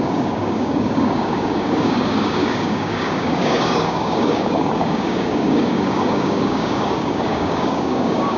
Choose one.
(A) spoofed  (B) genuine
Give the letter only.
A